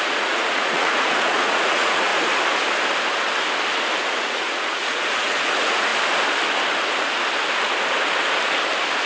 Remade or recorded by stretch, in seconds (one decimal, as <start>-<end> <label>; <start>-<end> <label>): 0.0-2.1 remade; 2.1-4.0 recorded; 4.0-5.9 remade; 5.9-9.1 recorded